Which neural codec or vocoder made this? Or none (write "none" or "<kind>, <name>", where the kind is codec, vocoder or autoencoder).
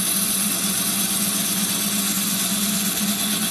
vocoder, Vocos